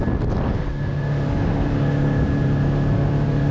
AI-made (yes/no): no